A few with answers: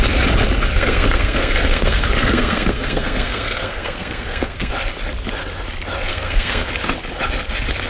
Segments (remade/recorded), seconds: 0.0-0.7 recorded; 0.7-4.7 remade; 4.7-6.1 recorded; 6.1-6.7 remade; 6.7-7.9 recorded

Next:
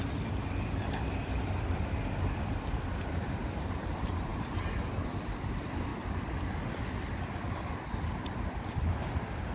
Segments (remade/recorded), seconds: 0.0-9.5 recorded

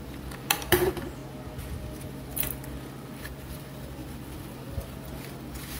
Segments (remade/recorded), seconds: 0.0-1.2 remade; 1.2-3.1 recorded; 3.1-5.8 remade

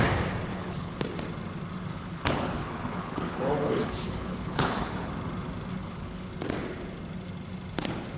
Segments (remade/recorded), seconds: 0.0-0.5 recorded; 0.5-1.0 remade; 1.0-1.9 recorded; 1.9-5.1 remade; 5.1-5.8 recorded; 5.8-6.3 remade; 6.3-8.2 recorded

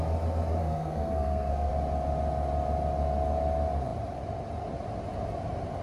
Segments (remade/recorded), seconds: 0.0-0.6 recorded; 0.6-1.7 remade; 1.7-5.8 recorded